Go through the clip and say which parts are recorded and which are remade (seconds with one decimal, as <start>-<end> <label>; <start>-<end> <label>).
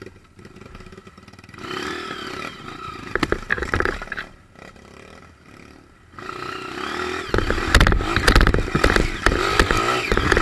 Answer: 0.0-3.5 recorded; 3.5-4.3 remade; 4.3-10.4 recorded